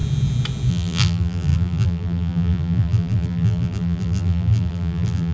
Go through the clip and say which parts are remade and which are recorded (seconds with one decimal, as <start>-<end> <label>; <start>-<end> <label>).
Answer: 0.0-0.7 recorded; 0.7-5.3 remade